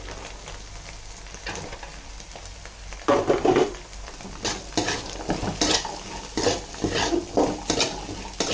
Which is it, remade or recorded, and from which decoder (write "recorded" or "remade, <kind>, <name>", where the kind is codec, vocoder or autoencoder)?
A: recorded